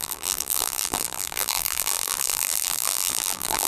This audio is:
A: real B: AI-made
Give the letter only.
B